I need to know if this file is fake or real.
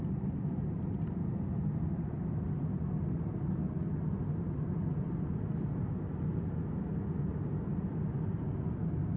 real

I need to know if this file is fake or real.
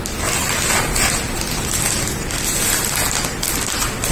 real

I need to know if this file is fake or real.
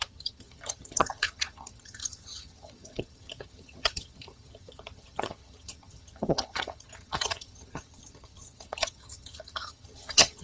fake